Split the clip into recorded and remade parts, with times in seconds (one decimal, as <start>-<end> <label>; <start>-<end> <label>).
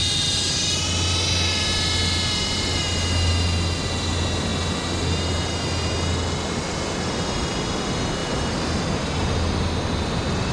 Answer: 0.0-8.2 recorded; 8.2-8.8 remade; 8.8-10.5 recorded